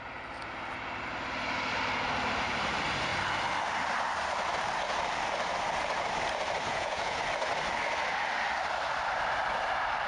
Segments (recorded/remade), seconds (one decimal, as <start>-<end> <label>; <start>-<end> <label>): 0.0-6.7 recorded; 6.7-7.2 remade; 7.2-10.1 recorded